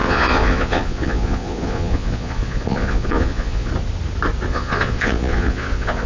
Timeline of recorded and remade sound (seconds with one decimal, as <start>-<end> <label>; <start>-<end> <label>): 0.0-3.7 remade; 3.7-4.5 recorded; 4.5-6.1 remade